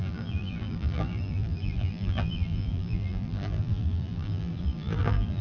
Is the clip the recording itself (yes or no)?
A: no